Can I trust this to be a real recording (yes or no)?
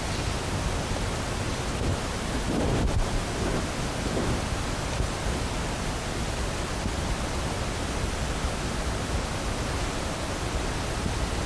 yes